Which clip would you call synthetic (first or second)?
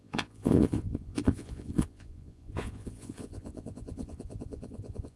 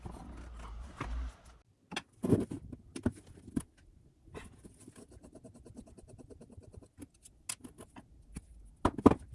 first